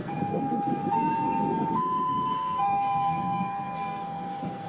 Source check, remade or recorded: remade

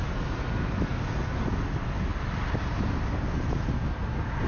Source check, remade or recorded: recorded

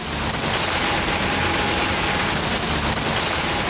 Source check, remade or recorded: recorded